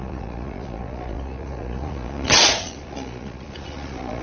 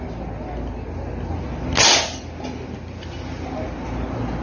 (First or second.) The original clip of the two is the second